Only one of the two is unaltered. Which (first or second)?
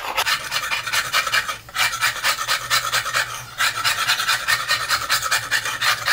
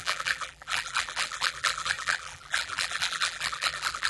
first